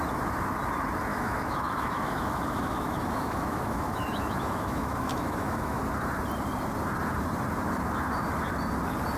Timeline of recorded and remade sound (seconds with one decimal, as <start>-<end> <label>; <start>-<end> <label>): 0.0-1.1 recorded; 1.1-5.8 remade; 5.8-9.2 recorded